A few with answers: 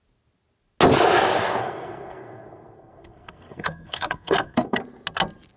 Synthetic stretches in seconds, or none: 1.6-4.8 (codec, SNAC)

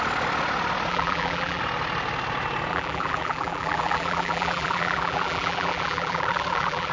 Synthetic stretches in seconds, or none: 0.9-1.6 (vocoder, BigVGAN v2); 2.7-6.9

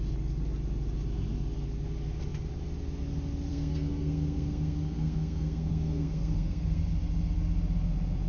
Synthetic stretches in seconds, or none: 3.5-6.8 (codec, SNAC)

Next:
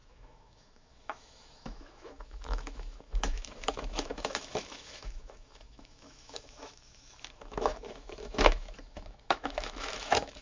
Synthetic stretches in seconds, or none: 0.0-10.4 (autoencoder, DAC-VAE)

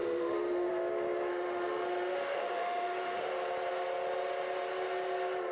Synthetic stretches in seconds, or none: 0.0-0.7 (autoencoder, DAC-VAE); 1.3-3.3

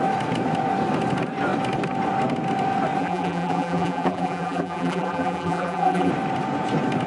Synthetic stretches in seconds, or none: 3.0-6.1 (vocoder, BigVGAN v2)

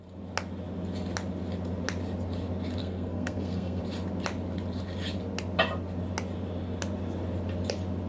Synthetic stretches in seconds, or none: 2.8-3.8 (codec, SNAC)

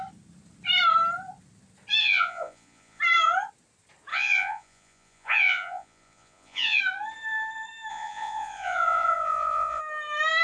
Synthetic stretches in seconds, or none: 2.0-3.0 (vocoder, Vocos); 4.1-6.8; 7.9-9.8